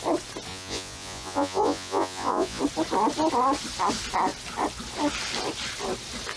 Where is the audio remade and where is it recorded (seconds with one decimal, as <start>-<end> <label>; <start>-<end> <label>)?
0.0-0.5 recorded; 0.5-2.6 remade; 2.6-6.4 recorded